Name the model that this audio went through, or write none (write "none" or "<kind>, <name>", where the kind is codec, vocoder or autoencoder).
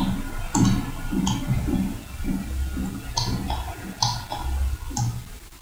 none